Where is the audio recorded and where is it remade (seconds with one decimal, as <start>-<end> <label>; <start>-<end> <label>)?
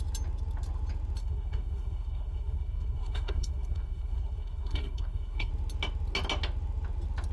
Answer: 0.0-1.2 recorded; 1.2-5.5 remade; 5.5-7.3 recorded